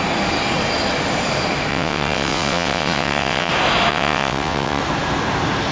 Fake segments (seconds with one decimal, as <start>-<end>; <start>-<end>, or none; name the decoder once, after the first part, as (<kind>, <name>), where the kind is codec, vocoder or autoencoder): 1.7-3.5 (vocoder, WaveNeXt); 3.9-4.8